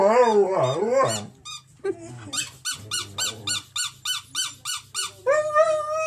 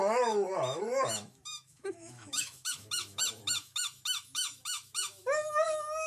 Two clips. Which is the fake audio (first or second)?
second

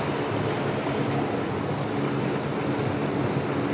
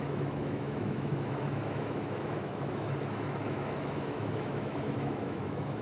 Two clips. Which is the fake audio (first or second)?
second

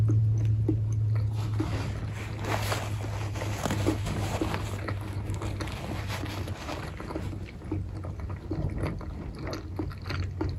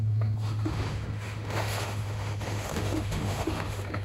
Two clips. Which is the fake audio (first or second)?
second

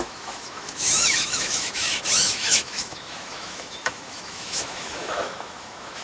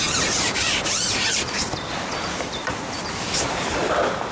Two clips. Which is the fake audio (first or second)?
first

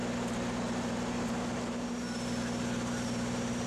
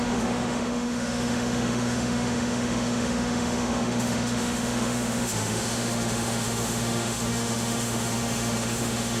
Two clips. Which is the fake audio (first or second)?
second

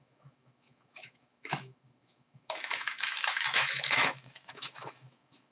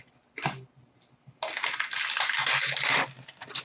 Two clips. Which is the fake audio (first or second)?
first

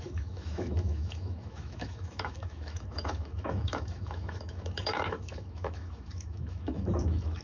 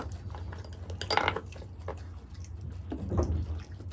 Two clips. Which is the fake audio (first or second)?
first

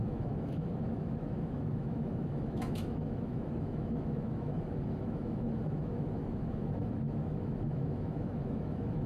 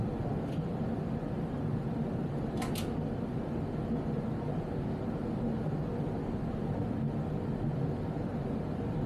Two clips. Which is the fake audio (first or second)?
first